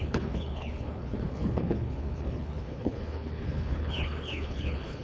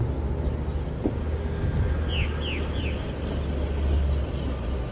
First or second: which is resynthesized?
first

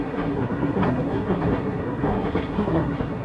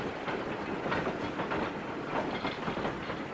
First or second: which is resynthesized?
first